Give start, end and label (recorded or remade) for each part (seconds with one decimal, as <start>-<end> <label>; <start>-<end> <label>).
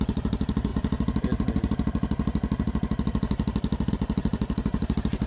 0.0-0.7 remade; 0.7-3.9 recorded; 3.9-5.3 remade